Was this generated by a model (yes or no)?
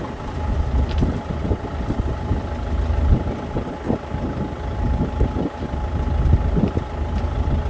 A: no